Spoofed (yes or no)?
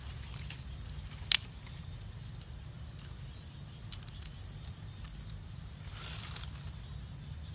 no